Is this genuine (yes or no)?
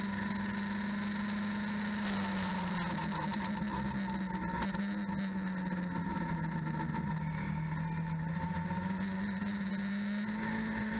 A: yes